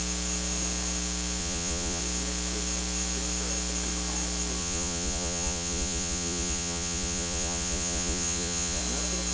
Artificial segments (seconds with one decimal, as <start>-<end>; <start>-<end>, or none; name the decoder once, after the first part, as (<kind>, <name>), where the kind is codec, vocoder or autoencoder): 1.4-2.0 (vocoder, Vocos); 4.6-8.8